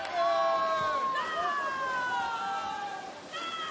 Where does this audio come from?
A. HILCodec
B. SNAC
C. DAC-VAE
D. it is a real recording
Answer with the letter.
D